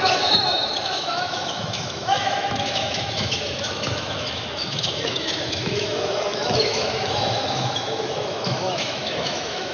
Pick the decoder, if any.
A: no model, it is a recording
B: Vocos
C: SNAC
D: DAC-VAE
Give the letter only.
D